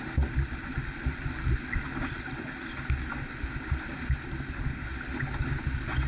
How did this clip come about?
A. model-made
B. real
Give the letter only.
B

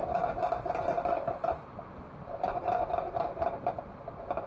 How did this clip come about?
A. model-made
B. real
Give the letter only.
B